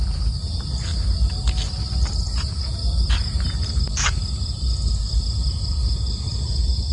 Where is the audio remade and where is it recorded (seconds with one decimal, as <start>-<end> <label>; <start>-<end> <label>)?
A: 0.0-6.9 recorded